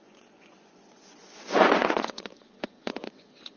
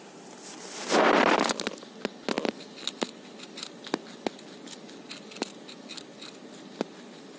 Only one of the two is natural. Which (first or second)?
second